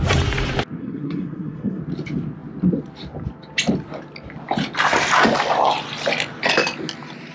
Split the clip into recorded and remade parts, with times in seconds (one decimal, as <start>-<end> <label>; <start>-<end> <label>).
0.0-0.8 recorded; 0.8-1.8 remade; 1.8-7.3 recorded